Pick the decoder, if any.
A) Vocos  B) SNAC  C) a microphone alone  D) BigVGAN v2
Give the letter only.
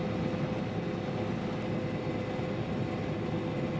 C